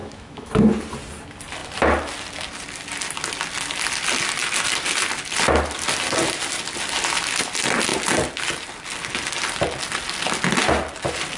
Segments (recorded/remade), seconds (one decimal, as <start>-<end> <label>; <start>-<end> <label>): 0.0-0.7 remade; 0.7-11.4 recorded